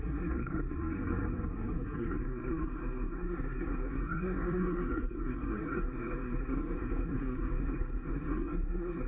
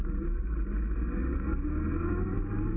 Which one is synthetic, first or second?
first